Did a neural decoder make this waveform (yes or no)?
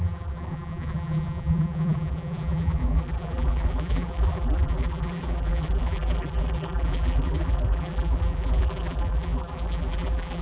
yes